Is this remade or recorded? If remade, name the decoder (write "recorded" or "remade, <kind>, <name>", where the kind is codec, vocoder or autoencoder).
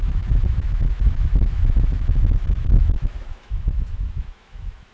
remade, autoencoder, DAC-VAE